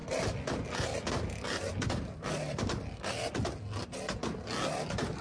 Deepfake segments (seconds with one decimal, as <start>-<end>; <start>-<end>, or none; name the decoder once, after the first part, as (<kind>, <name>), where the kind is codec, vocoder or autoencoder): none

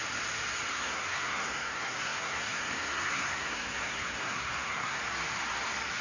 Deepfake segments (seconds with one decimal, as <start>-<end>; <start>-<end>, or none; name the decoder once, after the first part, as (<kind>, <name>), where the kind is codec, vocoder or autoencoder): 0.7-5.0 (codec, SNAC)

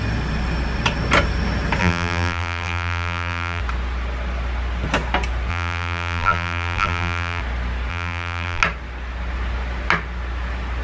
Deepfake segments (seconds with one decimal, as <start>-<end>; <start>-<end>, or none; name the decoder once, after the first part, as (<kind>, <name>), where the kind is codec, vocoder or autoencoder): 1.8-3.6 (vocoder, BigVGAN v2); 5.5-7.4; 7.9-8.6

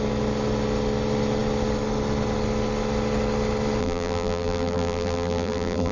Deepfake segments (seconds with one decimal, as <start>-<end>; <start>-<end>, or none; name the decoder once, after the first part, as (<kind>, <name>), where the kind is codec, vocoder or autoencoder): 3.8-5.9 (vocoder, BigVGAN v2)

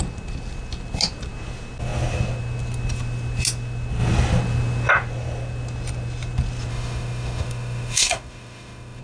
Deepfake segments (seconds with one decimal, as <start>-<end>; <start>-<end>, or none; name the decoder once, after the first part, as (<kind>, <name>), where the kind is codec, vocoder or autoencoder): 6.7-9.0 (autoencoder, DAC-VAE)

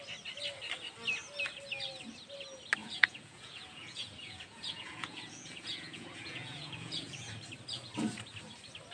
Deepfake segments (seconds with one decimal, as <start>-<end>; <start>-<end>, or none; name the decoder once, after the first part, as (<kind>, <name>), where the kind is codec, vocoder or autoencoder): 2.8-7.3 (vocoder, Vocos)

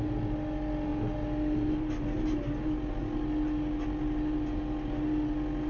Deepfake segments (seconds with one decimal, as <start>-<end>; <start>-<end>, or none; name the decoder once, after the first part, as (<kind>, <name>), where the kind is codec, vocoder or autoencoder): none

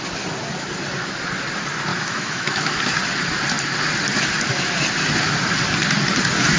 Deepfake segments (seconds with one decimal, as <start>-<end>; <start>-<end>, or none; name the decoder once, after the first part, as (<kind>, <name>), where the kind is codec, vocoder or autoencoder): 1.9-2.8 (autoencoder, DAC-VAE)